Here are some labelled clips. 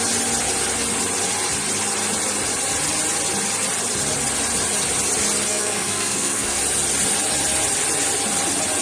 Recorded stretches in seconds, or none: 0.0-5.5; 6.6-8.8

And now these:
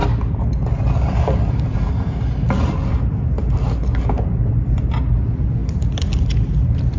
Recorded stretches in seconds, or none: 0.0-7.0

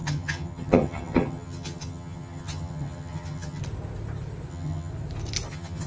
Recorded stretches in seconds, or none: 3.6-4.5; 4.9-5.5